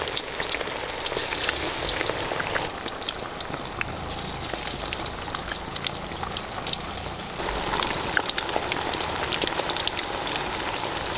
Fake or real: real